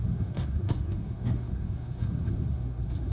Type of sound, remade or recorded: remade